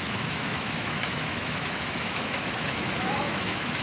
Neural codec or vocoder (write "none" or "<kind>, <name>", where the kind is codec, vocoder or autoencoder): autoencoder, DAC-VAE